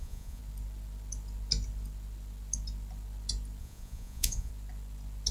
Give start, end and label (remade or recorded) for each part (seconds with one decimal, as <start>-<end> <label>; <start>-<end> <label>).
0.0-0.4 remade; 0.4-3.6 recorded; 3.6-4.5 remade; 4.5-5.3 recorded